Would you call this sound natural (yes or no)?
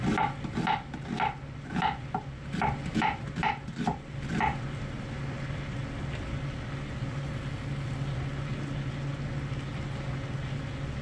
yes